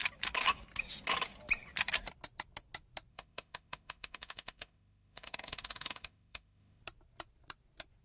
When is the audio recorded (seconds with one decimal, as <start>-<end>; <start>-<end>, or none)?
0.0-3.1; 6.8-8.0